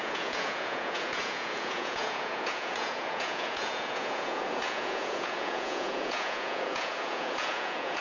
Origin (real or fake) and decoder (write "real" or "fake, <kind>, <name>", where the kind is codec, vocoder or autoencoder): fake, vocoder, Vocos